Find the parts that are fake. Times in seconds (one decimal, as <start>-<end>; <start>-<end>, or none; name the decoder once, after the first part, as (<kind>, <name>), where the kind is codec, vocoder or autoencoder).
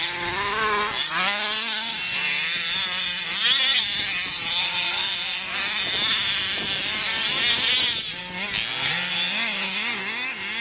none